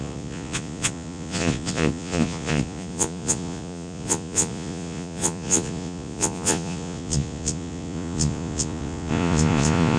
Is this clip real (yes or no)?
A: no